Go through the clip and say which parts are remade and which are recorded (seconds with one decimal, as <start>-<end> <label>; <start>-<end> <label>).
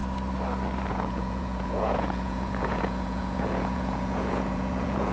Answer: 0.0-0.9 recorded; 0.9-5.1 remade